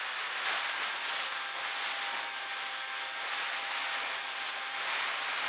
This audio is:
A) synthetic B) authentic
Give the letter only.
B